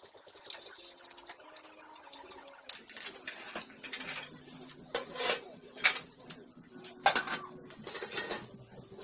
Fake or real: real